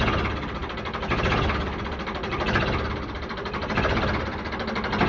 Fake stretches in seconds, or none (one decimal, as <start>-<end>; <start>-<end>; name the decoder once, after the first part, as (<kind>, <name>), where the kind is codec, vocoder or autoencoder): none